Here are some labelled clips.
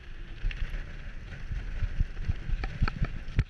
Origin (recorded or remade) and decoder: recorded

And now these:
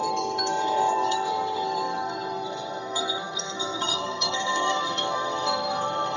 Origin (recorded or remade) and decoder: remade, codec, SNAC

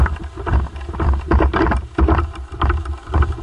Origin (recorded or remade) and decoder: recorded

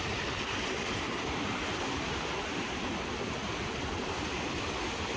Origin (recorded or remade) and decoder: recorded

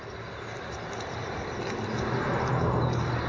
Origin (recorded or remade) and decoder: recorded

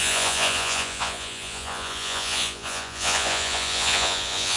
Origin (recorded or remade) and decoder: remade, vocoder, Vocos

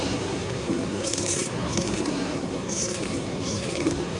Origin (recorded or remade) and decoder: remade, codec, SNAC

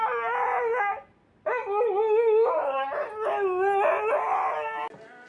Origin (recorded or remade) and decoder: recorded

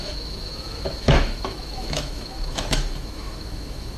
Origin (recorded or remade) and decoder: remade, autoencoder, DAC-VAE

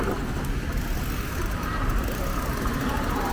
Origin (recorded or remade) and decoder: recorded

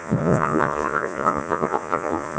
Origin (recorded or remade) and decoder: remade, vocoder, Vocos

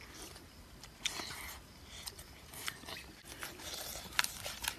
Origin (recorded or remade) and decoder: recorded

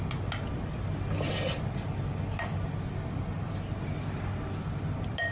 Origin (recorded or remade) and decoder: recorded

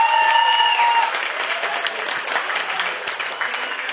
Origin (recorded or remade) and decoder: recorded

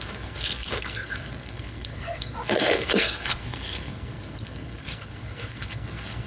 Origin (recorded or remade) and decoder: remade, codec, SNAC